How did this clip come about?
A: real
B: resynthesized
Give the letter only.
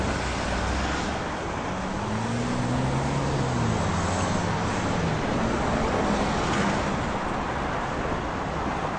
A